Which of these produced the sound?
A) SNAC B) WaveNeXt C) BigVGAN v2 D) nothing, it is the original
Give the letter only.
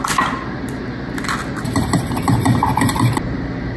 D